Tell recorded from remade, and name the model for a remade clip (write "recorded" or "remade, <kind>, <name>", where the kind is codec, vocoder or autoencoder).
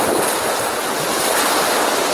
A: recorded